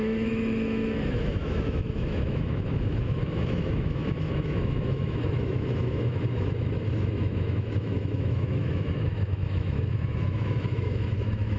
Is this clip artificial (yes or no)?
yes